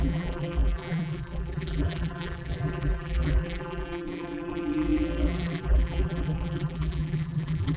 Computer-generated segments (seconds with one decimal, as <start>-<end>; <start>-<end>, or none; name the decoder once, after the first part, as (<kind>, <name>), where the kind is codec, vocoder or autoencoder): 0.0-7.8 (vocoder, BigVGAN v2)